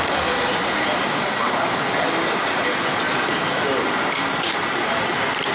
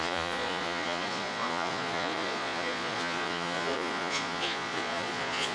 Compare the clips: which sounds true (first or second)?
first